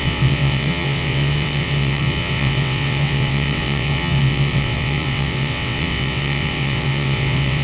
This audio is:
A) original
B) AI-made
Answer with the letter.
B